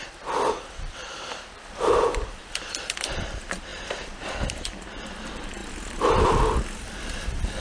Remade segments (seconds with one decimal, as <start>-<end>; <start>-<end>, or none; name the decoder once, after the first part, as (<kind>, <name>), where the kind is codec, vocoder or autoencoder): 0.0-2.4 (vocoder, BigVGAN v2); 3.1-5.6; 6.8-7.6